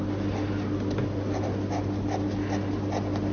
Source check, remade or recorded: recorded